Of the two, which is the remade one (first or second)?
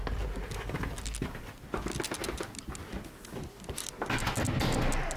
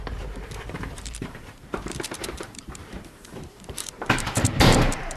second